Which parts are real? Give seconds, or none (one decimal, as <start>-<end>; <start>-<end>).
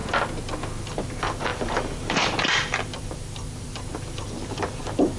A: 0.0-0.8